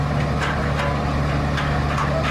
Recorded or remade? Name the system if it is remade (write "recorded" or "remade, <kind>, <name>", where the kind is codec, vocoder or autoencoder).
recorded